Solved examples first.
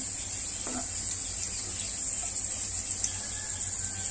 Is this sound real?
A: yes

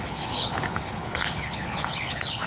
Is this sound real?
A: no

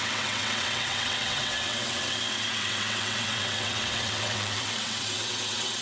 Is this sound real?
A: no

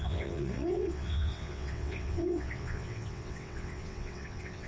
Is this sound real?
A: no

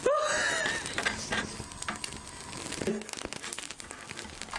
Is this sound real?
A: yes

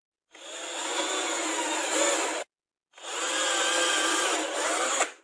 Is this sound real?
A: yes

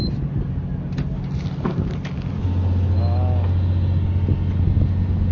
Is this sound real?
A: yes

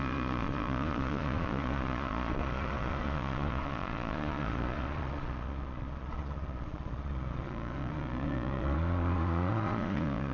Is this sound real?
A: no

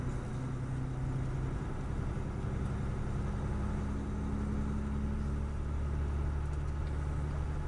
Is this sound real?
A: yes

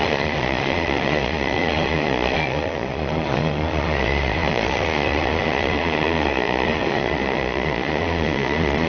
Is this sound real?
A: no